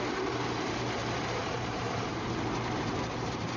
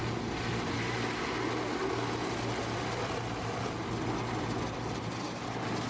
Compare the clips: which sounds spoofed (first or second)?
first